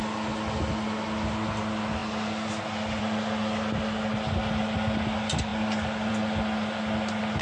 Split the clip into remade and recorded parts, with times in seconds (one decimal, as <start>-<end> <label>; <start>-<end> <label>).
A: 0.0-7.4 recorded